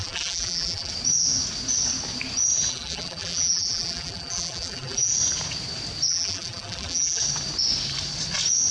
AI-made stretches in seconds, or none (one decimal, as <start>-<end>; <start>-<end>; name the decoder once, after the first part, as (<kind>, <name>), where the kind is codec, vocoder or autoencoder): 0.0-0.9 (vocoder, BigVGAN v2); 2.7-5.1; 6.1-7.2